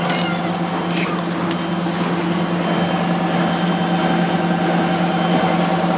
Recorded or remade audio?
recorded